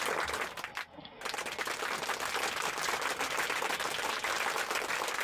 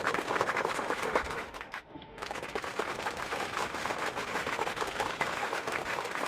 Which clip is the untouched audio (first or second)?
first